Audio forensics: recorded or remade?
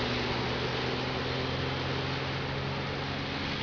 recorded